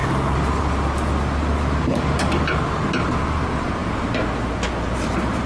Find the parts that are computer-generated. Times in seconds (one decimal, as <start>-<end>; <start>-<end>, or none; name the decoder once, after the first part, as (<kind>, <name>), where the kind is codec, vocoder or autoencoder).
none